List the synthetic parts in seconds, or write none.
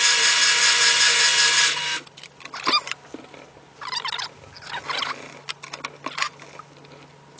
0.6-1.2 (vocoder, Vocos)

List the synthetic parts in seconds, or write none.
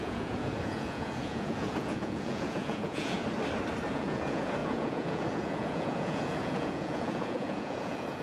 0.0-3.2 (vocoder, Vocos); 3.9-8.2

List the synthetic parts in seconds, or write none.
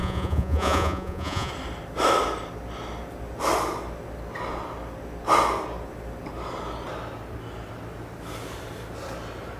0.0-1.5 (vocoder, Vocos)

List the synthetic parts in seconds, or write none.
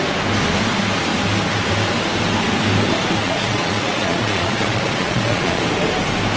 3.2-5.6 (vocoder, Vocos)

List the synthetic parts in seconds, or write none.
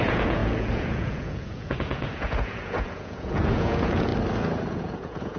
0.0-4.1 (vocoder, Vocos); 4.7-5.4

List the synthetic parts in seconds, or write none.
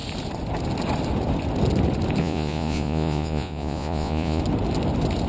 2.2-4.4 (vocoder, Vocos)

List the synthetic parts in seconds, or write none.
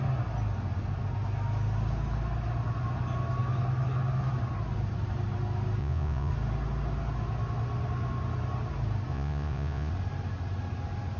5.8-6.3 (vocoder, Vocos); 9.1-9.9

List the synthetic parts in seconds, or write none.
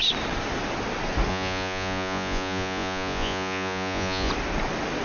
1.3-4.3 (vocoder, Vocos)